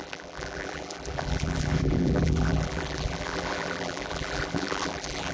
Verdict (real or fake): fake